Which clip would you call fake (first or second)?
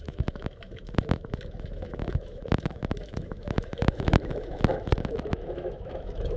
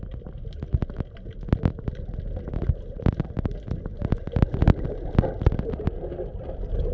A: first